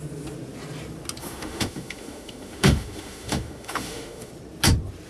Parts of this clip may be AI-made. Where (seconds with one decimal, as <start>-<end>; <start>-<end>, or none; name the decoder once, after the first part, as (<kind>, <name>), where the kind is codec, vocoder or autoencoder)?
1.2-4.3 (autoencoder, DAC-VAE)